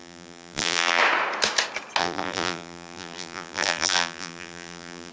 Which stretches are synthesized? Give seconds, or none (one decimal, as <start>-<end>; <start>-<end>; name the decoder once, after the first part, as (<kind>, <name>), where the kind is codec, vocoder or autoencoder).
0.0-1.0 (vocoder, BigVGAN v2); 2.0-5.1